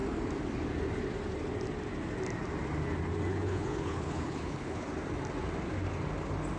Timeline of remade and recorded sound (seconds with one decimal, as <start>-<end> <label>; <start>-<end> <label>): 0.0-3.3 recorded; 3.3-4.9 remade; 4.9-6.6 recorded